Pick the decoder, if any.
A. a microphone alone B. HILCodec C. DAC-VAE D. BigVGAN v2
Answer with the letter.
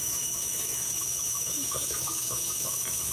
C